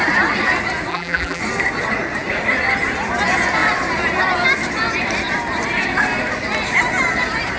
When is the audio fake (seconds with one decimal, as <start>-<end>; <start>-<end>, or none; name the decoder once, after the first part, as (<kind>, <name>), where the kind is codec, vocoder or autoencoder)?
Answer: 0.9-1.4 (vocoder, BigVGAN v2)